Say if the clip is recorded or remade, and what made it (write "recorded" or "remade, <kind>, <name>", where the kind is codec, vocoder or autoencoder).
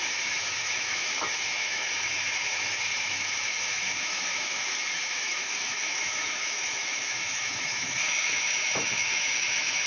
remade, autoencoder, DAC-VAE